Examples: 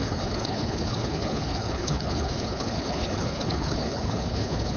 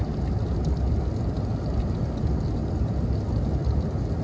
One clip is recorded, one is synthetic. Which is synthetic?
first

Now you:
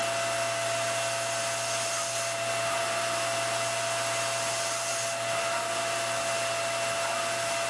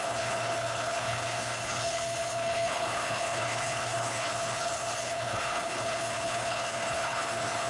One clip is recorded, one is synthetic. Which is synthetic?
second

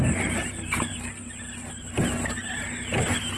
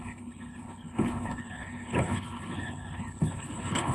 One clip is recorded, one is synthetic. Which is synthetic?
second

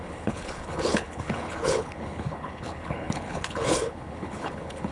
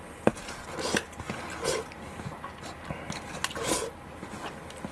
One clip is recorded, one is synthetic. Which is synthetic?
first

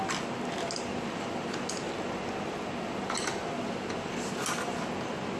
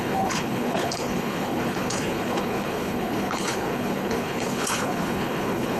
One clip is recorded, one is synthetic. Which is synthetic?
second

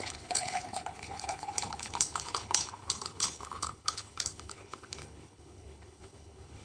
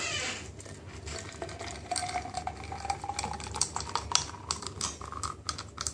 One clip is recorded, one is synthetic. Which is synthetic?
first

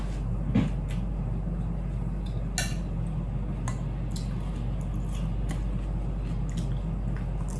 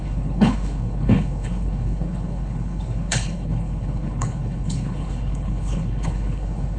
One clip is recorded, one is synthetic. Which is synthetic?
second